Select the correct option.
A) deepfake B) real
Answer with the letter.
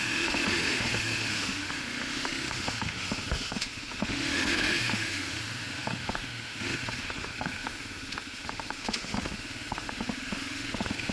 A